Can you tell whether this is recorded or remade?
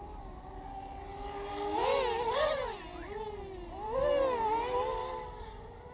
recorded